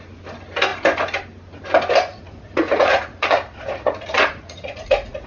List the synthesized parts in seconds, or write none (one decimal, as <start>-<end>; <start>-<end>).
2.1-5.3

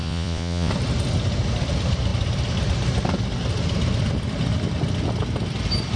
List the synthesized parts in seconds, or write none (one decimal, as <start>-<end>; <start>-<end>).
0.0-0.7

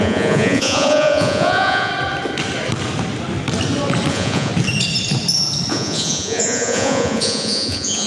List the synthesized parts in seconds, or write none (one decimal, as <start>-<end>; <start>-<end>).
0.0-1.9; 4.1-4.5; 5.7-8.1

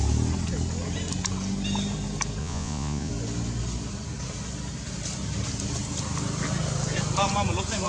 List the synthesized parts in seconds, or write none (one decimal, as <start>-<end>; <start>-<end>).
2.4-3.1

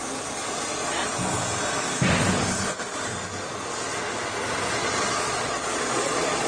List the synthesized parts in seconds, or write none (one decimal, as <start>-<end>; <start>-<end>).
4.8-6.5

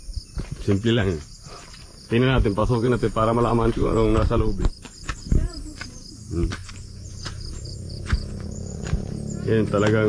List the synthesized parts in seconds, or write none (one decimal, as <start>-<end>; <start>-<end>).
2.6-6.1; 6.6-9.1

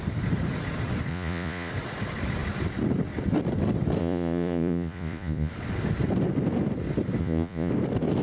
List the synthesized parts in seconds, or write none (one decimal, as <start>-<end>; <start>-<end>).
1.1-1.7; 4.0-5.5; 7.2-7.7

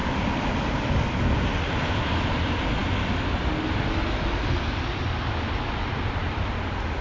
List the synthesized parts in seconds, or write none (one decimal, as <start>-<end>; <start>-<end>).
none